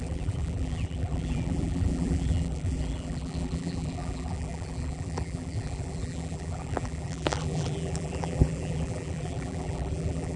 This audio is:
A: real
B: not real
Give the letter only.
B